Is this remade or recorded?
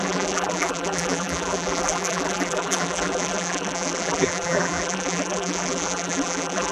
remade